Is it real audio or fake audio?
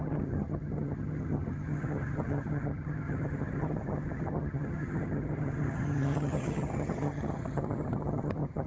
fake